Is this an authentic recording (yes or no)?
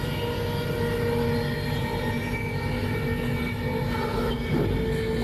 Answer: yes